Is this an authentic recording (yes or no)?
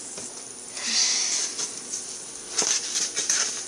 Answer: yes